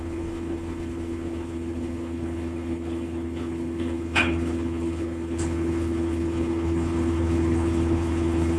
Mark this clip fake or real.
fake